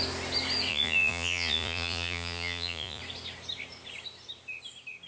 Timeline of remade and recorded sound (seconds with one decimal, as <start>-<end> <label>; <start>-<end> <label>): 0.0-0.7 recorded; 0.7-3.0 remade; 3.0-5.1 recorded

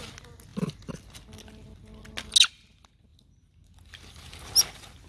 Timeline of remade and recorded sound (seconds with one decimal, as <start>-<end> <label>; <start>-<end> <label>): 0.0-5.1 recorded

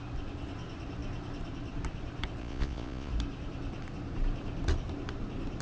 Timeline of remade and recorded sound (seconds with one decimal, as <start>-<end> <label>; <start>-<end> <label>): 0.0-2.4 recorded; 2.4-3.1 remade; 3.1-5.6 recorded

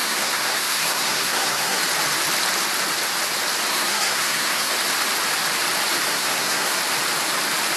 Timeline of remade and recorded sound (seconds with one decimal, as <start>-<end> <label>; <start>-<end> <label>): 0.0-1.8 remade; 1.8-3.7 recorded; 3.7-4.7 remade; 4.7-6.1 recorded; 6.1-6.8 remade; 6.8-7.8 recorded

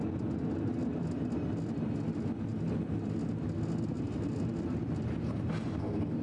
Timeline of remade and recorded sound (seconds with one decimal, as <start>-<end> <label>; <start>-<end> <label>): 0.0-6.2 recorded

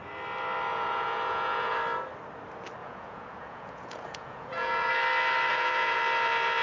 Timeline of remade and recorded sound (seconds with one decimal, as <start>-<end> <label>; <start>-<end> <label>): 0.0-0.7 recorded; 0.7-1.7 remade; 1.7-2.8 recorded; 2.8-4.9 remade; 4.9-5.5 recorded; 5.5-6.0 remade; 6.0-6.6 recorded